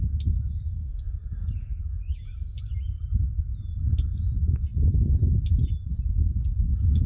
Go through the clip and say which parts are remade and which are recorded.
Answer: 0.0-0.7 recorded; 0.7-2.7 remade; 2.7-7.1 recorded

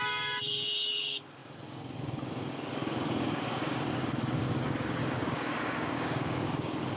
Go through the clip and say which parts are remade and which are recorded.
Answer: 0.0-7.0 remade

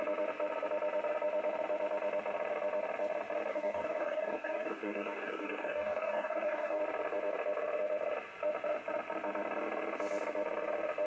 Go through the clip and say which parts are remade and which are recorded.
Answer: 0.0-3.5 recorded; 3.5-6.8 remade; 6.8-11.1 recorded